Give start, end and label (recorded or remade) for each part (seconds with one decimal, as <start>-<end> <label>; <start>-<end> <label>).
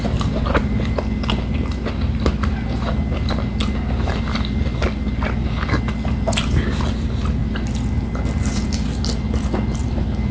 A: 0.0-10.3 recorded